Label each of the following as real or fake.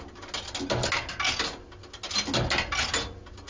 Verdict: real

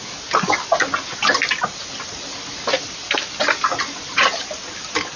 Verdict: real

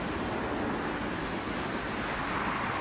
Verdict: real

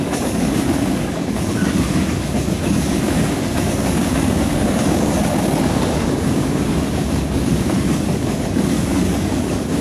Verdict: fake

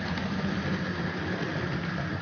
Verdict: fake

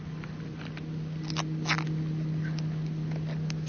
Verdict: real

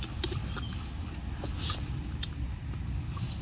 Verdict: real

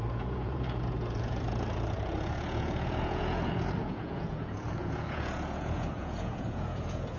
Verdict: fake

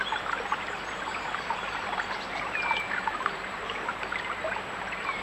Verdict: fake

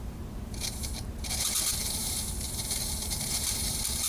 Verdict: fake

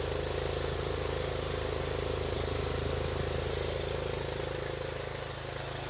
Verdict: real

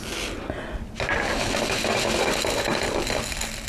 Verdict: real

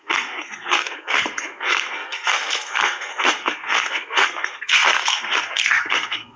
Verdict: fake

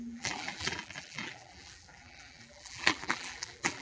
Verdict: fake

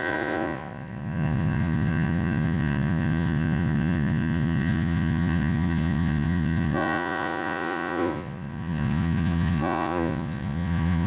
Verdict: fake